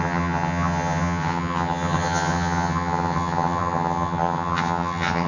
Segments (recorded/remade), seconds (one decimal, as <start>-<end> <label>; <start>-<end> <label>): 0.0-5.3 remade